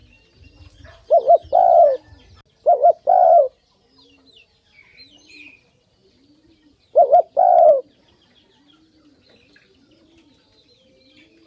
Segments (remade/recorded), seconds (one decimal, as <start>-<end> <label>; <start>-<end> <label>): 0.0-6.0 recorded; 6.0-10.1 remade; 10.1-11.5 recorded